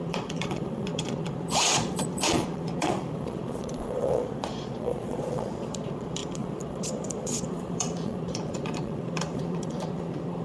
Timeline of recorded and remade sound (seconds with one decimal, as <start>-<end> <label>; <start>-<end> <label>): 0.0-10.4 remade